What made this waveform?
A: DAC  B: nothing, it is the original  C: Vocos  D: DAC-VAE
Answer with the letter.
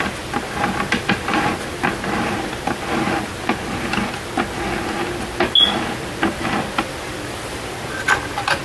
B